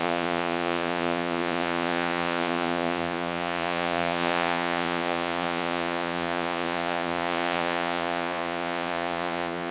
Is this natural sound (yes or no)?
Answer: no